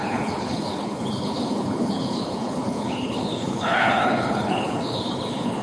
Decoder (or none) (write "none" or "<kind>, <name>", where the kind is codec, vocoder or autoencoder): codec, HILCodec